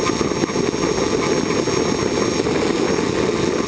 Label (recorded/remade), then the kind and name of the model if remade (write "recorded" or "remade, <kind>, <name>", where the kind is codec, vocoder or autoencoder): recorded